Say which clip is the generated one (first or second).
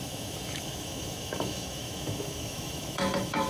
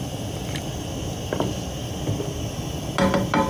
first